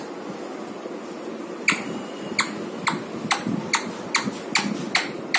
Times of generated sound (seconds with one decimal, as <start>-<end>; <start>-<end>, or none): none